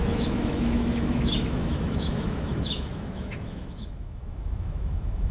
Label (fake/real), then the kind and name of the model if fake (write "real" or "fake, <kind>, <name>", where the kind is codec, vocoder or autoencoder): fake, autoencoder, DAC-VAE